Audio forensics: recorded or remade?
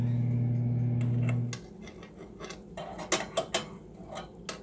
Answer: recorded